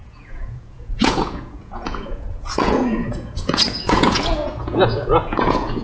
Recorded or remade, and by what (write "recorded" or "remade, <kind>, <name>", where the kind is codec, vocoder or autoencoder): remade, vocoder, Vocos